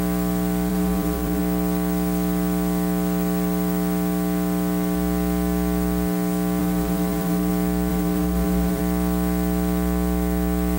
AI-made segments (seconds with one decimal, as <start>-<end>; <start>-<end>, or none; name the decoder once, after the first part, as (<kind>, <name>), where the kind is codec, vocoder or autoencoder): 0.7-1.4 (vocoder, BigVGAN v2); 6.6-7.5; 7.9-8.8